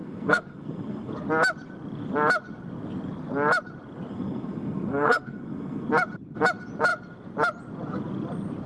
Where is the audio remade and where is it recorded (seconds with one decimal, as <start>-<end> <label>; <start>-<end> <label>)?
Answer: 0.0-1.1 remade; 1.1-4.1 recorded; 4.1-5.9 remade; 5.9-8.7 recorded